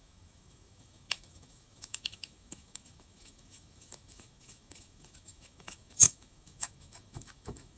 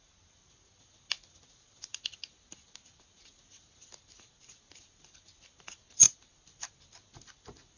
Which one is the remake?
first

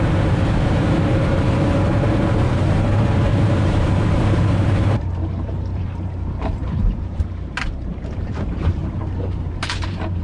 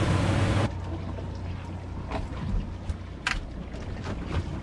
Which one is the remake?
first